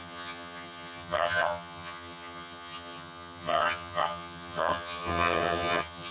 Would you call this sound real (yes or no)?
no